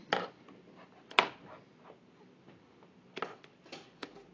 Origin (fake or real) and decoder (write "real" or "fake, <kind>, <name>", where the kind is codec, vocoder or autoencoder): real